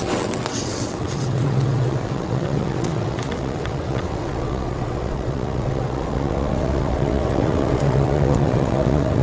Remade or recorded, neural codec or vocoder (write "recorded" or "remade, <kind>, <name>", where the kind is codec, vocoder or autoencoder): remade, vocoder, WaveNeXt